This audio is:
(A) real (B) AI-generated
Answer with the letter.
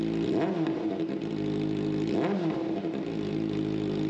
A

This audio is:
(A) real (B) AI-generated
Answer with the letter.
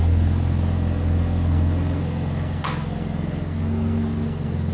B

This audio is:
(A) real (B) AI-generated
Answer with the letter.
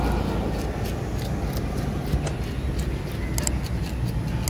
A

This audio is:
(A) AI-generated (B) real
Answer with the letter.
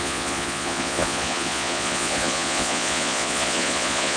A